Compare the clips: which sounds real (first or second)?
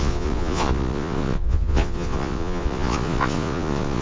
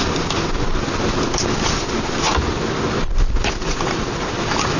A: second